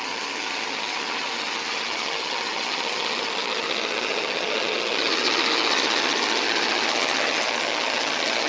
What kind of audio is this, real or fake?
fake